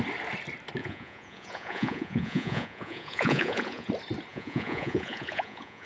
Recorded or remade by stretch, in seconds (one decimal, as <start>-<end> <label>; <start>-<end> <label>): 0.0-0.8 recorded; 0.8-3.9 remade; 3.9-4.3 recorded; 4.3-5.9 remade